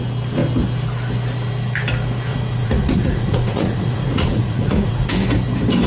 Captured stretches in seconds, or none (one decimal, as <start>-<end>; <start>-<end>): 0.0-2.3; 5.1-5.9